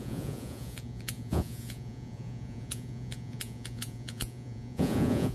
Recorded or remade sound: remade